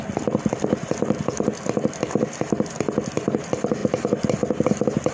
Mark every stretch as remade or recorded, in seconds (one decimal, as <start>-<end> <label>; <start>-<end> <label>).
0.0-5.1 recorded